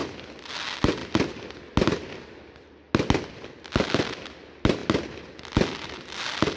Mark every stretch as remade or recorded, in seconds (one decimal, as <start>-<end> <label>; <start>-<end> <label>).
0.0-0.5 remade; 0.5-6.6 recorded